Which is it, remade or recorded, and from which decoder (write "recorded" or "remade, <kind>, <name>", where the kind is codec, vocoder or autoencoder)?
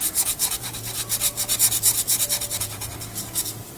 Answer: remade, vocoder, Vocos